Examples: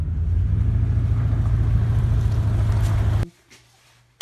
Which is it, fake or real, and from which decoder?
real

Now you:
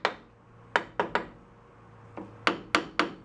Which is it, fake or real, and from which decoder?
real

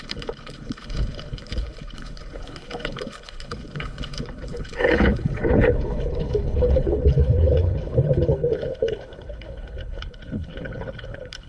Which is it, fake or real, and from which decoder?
fake, codec, HILCodec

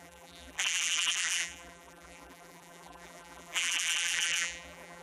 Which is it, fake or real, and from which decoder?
fake, vocoder, BigVGAN v2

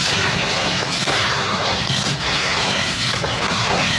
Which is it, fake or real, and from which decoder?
fake, codec, SNAC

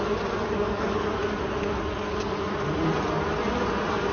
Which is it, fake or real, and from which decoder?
real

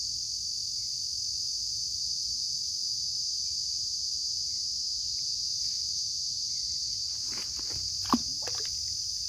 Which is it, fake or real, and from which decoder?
real